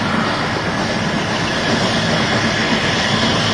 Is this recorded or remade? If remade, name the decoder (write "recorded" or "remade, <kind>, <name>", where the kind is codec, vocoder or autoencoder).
recorded